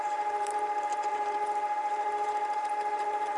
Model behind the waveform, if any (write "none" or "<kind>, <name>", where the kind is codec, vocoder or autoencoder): vocoder, BigVGAN v2